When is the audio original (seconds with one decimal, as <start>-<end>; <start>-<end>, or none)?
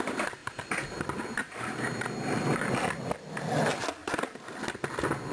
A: 0.0-0.4; 1.8-4.0; 4.6-5.3